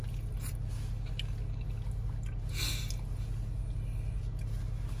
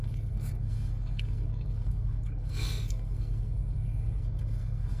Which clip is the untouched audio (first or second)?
first